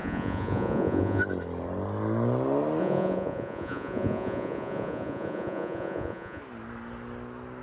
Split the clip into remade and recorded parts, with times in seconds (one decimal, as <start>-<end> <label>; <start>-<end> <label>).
0.0-1.2 remade; 1.2-2.8 recorded; 2.8-6.4 remade; 6.4-7.6 recorded